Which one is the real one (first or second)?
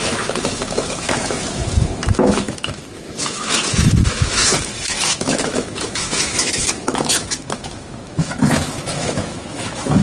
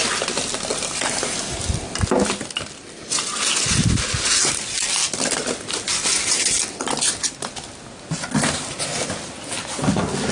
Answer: second